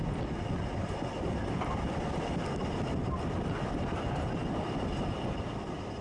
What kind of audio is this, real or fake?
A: real